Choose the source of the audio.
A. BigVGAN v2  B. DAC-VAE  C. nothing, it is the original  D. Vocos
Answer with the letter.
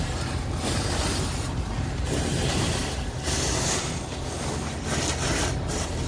C